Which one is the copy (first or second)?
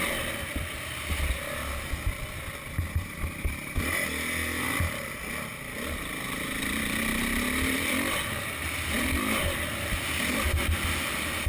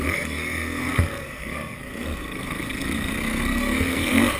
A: second